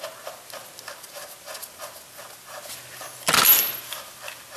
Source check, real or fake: real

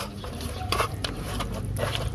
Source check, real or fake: fake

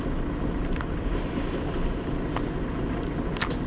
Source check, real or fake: real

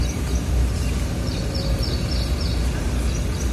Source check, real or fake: real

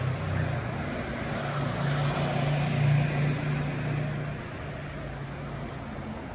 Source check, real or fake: real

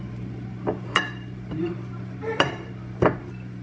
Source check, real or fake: fake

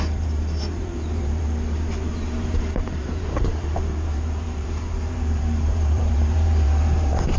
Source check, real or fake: fake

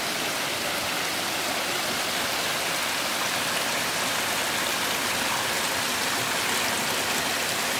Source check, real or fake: real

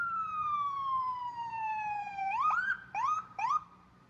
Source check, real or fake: fake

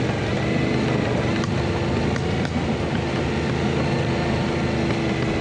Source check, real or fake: real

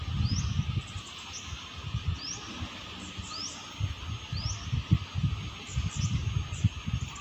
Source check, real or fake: real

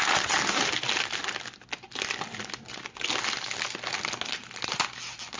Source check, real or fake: real